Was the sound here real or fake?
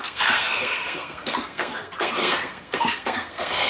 fake